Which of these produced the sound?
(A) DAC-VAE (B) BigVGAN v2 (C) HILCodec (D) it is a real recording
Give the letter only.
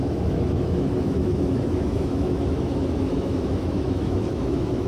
A